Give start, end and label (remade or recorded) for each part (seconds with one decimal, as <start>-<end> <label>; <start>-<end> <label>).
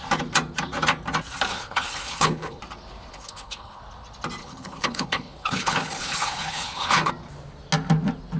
0.0-1.5 recorded; 1.5-2.6 remade; 2.6-3.1 recorded; 3.1-3.8 remade; 3.8-4.4 recorded; 4.4-7.1 remade; 7.1-8.4 recorded